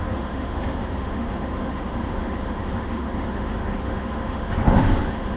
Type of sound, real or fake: fake